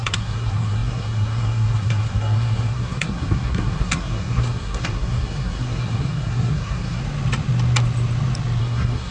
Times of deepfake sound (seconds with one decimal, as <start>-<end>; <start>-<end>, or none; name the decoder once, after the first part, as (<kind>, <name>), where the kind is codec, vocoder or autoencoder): 0.0-7.0 (codec, SNAC); 8.6-9.1